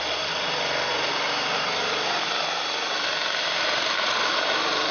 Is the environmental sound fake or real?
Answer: fake